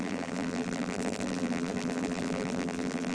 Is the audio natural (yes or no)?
no